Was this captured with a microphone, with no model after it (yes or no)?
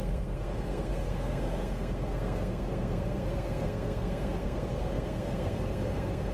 no